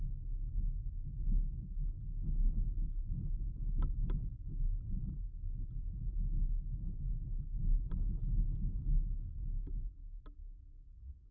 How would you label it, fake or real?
real